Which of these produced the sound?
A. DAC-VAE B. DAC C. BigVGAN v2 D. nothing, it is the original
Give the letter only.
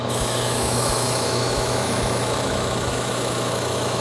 A